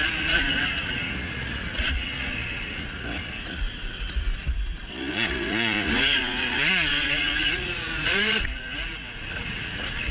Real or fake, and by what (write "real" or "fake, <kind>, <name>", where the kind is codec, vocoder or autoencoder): fake, vocoder, Vocos